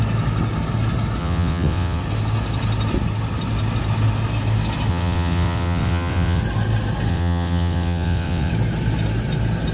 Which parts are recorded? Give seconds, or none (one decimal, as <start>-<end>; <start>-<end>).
0.0-1.2; 2.0-4.9; 6.4-7.1; 8.5-9.7